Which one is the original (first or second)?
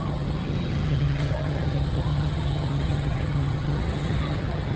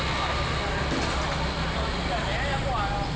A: second